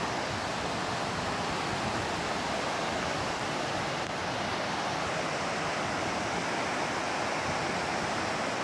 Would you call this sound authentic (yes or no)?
yes